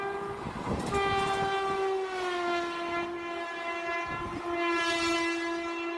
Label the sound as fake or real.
real